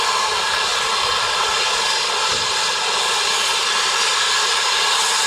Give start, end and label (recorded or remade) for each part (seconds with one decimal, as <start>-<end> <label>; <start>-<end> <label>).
0.0-0.7 recorded; 0.7-1.6 remade; 1.6-2.3 recorded; 2.3-4.1 remade; 4.1-5.3 recorded

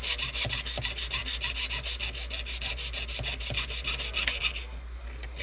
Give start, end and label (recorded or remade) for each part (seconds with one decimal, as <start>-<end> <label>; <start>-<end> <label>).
0.0-5.4 recorded

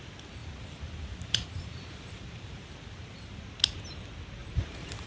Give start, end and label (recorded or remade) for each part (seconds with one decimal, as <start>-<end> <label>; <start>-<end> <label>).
0.0-0.4 recorded; 0.4-3.4 remade; 3.4-4.4 recorded; 4.4-5.1 remade

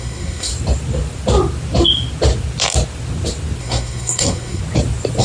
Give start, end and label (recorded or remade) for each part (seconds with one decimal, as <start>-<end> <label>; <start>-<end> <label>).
0.0-0.5 remade; 0.5-3.6 recorded; 3.6-4.6 remade; 4.6-5.2 recorded

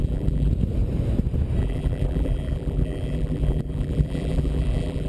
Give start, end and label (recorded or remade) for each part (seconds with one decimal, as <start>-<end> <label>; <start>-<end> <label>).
0.0-0.5 remade; 0.5-1.6 recorded; 1.6-5.1 remade

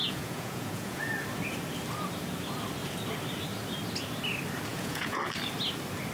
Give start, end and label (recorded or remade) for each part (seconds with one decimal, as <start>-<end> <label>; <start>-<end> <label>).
0.0-1.0 remade; 1.0-4.7 recorded; 4.7-5.2 remade; 5.2-6.1 recorded